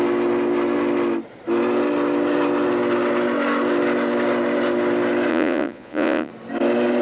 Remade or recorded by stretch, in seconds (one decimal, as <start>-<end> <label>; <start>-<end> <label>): 0.0-5.3 recorded; 5.3-6.3 remade; 6.3-7.0 recorded